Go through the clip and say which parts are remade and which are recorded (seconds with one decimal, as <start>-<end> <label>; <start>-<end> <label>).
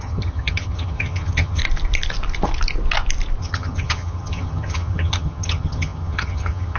0.0-1.6 remade; 1.6-3.4 recorded; 3.4-6.8 remade